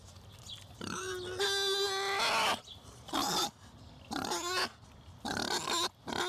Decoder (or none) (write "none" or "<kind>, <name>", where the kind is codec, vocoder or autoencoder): none